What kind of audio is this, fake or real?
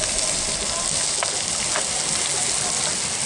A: real